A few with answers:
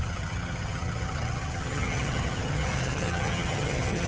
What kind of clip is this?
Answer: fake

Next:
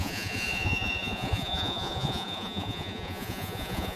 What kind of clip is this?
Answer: fake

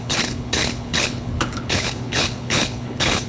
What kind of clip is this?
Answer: fake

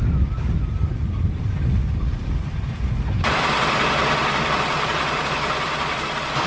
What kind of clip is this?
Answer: fake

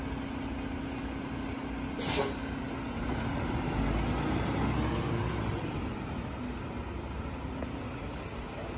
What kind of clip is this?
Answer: real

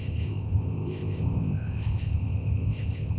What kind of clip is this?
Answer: fake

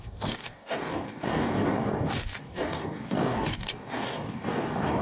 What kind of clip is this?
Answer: fake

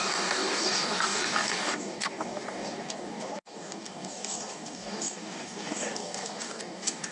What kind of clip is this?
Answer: fake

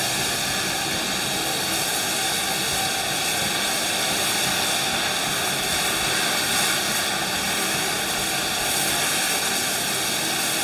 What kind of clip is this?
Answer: real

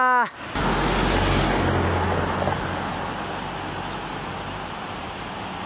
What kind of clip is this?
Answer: real